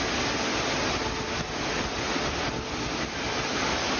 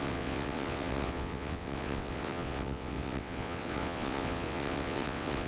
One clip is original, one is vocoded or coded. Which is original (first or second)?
first